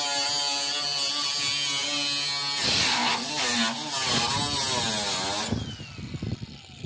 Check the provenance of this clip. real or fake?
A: real